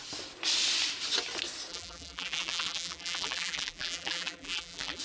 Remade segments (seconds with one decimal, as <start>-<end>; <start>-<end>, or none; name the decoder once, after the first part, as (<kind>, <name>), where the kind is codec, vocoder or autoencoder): 1.7-5.0 (vocoder, BigVGAN v2)